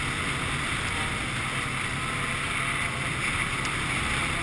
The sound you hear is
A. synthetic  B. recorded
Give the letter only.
B